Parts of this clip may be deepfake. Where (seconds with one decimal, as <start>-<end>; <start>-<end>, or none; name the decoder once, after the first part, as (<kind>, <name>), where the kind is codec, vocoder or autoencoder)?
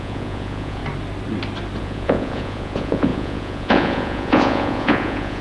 0.0-0.8 (vocoder, Vocos); 1.8-5.4